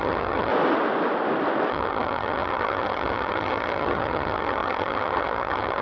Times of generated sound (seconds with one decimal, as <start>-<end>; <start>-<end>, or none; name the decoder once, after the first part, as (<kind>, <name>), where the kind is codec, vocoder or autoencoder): 0.0-0.5 (vocoder, HiFi-GAN); 1.7-5.8